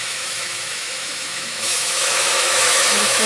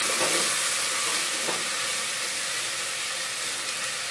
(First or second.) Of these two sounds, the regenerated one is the first